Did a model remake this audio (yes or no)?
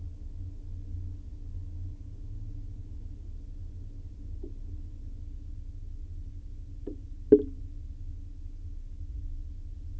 no